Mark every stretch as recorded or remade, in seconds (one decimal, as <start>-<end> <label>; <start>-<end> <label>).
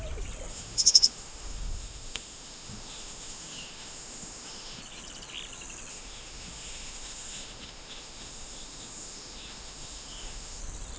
0.0-0.5 recorded; 0.5-4.8 remade; 4.8-5.9 recorded; 5.9-10.6 remade; 10.6-11.0 recorded